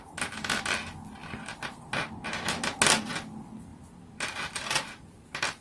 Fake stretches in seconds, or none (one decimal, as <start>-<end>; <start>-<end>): none